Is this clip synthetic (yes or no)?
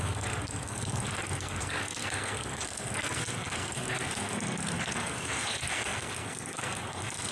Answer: yes